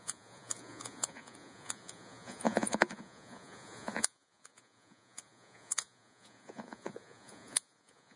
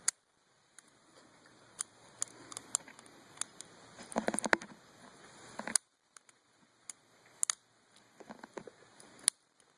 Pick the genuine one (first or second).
second